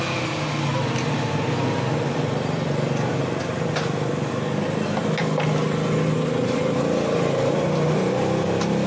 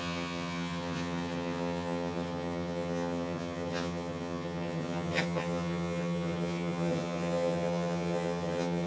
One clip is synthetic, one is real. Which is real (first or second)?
first